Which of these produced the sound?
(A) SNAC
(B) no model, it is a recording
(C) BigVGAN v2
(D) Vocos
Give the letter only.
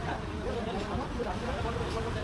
C